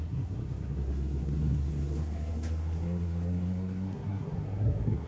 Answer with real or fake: fake